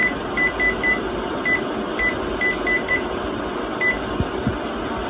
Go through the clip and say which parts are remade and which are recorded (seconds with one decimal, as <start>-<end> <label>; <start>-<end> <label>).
0.0-5.1 recorded